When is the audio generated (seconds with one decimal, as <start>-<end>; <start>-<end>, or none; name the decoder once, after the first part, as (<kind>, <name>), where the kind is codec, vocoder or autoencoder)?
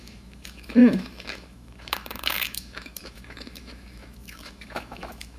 0.0-5.4 (autoencoder, DAC-VAE)